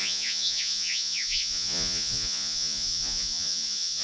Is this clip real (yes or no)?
no